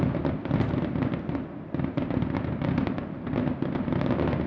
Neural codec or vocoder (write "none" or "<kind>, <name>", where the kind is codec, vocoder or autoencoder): none